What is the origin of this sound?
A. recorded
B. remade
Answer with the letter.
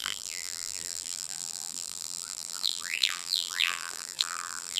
B